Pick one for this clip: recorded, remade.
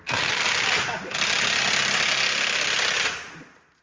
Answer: recorded